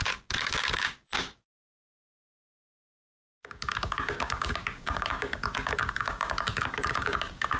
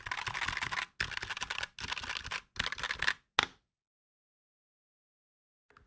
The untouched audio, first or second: second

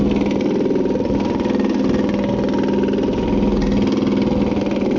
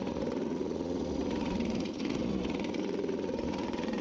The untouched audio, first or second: first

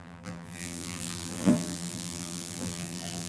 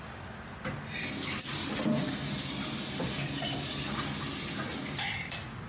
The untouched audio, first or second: second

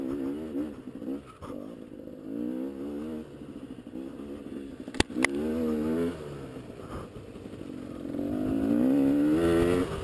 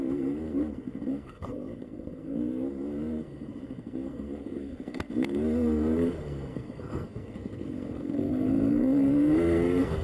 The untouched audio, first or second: first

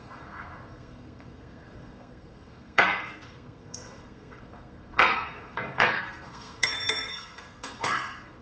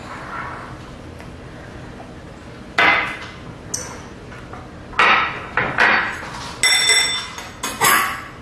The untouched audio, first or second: second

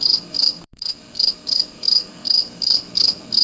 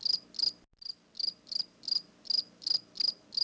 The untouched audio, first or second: second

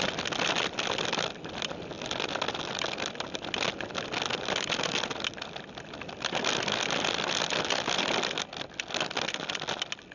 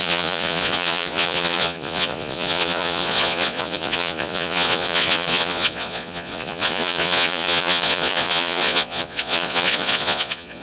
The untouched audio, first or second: first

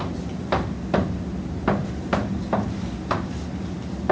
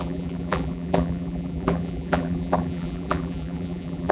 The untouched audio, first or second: first